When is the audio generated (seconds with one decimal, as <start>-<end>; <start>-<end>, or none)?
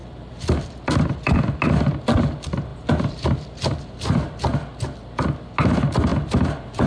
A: 0.0-1.4; 2.7-5.4; 6.1-6.9